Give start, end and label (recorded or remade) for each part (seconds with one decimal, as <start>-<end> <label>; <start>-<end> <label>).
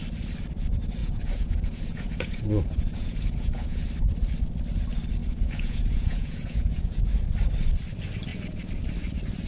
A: 0.0-1.0 recorded; 1.0-3.8 remade; 3.8-5.2 recorded; 5.2-7.1 remade; 7.1-9.5 recorded